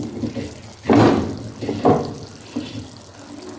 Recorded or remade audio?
recorded